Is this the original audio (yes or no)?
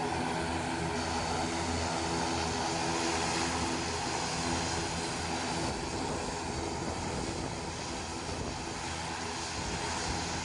yes